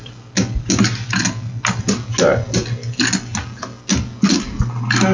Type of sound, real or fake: real